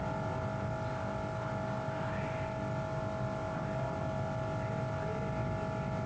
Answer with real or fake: real